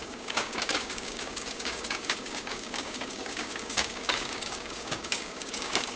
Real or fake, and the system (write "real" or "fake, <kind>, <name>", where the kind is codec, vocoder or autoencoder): fake, codec, DAC